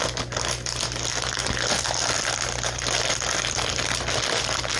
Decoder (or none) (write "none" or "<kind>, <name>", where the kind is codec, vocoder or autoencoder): none